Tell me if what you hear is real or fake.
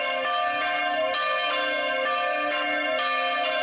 real